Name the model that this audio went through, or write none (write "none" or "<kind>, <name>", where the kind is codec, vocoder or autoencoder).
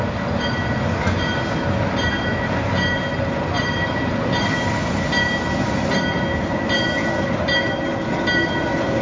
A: none